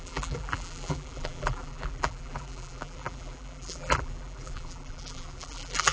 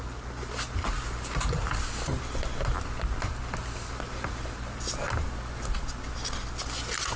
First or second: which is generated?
first